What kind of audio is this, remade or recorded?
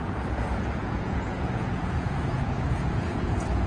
remade